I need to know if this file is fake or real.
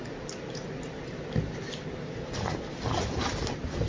real